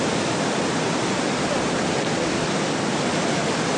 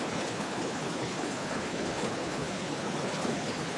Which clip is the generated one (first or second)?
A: second